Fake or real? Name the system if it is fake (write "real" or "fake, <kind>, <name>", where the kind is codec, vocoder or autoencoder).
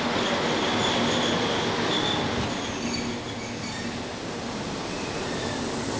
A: real